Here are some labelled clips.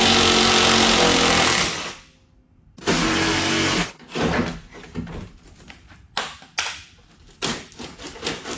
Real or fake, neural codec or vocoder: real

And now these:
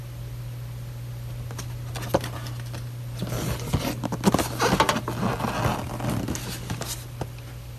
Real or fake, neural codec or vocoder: real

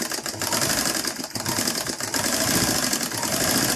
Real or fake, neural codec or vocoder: fake, vocoder, BigVGAN v2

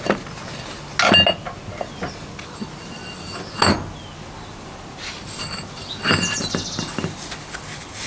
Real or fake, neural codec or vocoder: real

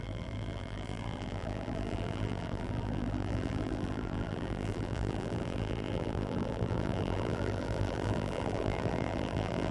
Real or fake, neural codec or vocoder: fake, vocoder, BigVGAN v2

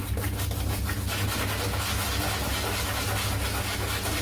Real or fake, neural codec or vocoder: real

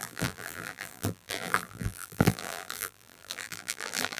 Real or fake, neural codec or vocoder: fake, vocoder, BigVGAN v2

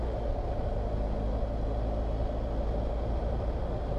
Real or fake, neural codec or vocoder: real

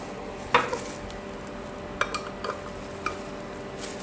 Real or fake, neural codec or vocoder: real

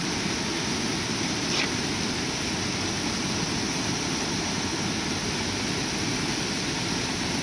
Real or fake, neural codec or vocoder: real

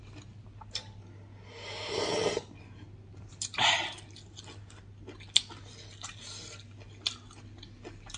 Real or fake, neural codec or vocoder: real